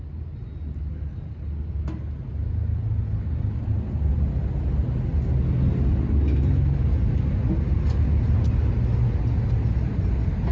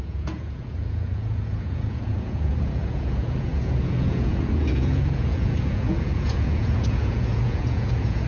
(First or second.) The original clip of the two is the first